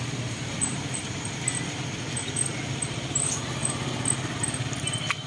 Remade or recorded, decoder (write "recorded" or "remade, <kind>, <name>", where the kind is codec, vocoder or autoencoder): recorded